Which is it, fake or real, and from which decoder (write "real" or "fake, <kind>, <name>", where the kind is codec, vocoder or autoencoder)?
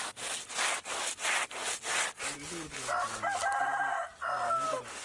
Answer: real